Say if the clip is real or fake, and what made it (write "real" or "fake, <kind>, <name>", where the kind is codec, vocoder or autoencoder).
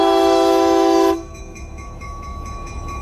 fake, autoencoder, DAC-VAE